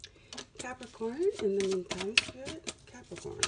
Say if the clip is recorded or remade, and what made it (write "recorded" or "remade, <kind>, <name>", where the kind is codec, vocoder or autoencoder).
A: recorded